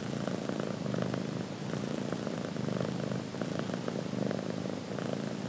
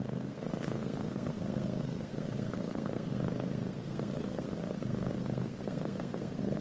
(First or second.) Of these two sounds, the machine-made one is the second